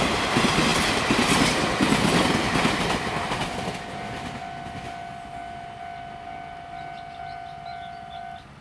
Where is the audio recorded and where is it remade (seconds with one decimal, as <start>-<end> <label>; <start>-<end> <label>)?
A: 0.0-8.6 recorded